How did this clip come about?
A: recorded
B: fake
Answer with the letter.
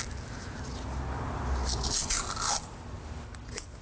A